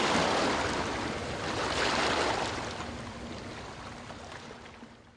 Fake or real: real